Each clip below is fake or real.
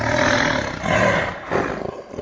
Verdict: real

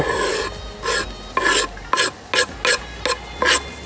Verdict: real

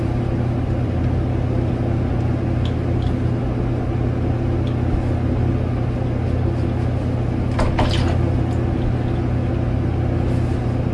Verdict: real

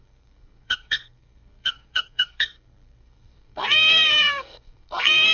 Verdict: fake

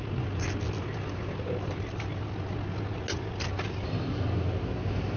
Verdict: real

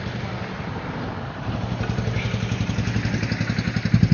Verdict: real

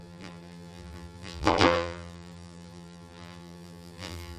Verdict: fake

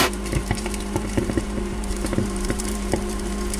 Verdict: fake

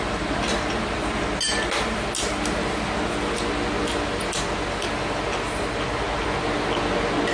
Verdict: real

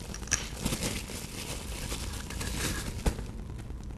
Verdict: real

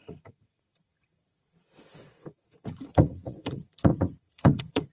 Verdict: fake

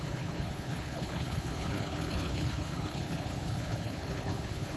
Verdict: fake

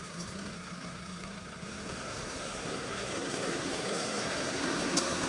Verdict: fake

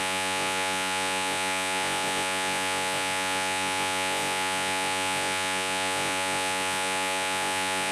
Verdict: fake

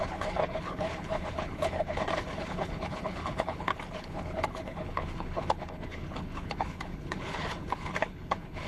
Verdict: fake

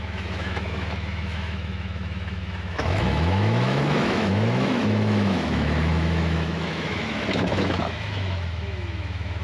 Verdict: fake